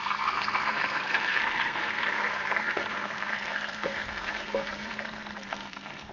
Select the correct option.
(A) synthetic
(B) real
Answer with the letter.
A